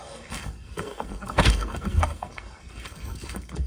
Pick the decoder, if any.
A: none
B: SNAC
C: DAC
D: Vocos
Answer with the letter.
B